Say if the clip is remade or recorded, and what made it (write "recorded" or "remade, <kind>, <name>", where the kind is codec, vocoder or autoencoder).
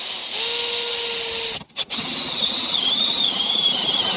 recorded